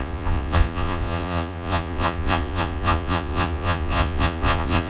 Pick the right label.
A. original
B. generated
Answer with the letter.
B